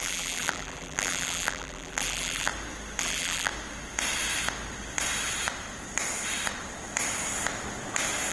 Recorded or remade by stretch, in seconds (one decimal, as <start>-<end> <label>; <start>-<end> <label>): 0.0-2.5 remade; 2.5-3.0 recorded; 3.0-3.5 remade; 3.5-8.3 recorded